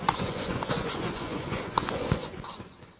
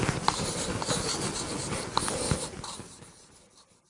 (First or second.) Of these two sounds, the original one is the second